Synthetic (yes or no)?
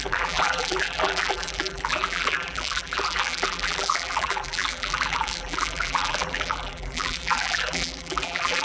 yes